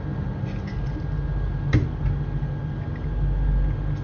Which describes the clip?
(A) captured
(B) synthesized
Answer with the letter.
A